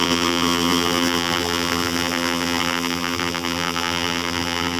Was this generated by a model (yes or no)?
yes